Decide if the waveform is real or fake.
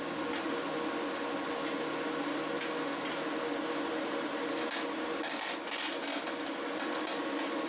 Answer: real